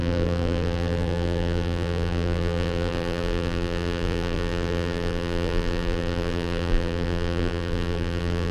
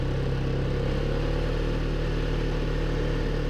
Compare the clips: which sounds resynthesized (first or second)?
first